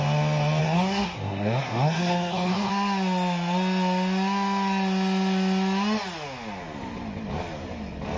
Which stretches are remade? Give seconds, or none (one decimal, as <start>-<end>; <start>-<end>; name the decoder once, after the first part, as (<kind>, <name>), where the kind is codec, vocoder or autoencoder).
0.6-2.7 (codec, SNAC)